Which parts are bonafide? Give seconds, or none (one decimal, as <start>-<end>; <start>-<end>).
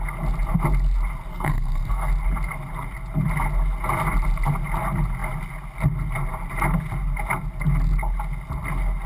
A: 0.0-1.3; 2.1-9.1